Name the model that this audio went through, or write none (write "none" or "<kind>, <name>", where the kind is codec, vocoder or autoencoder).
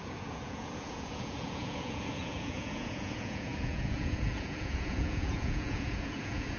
vocoder, Vocos